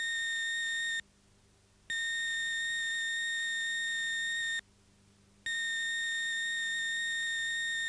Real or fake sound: real